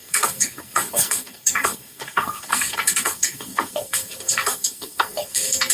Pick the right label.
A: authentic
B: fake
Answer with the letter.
B